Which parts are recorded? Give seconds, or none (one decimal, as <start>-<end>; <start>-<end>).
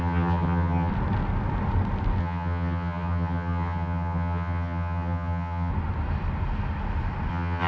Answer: 0.9-2.2; 5.7-7.3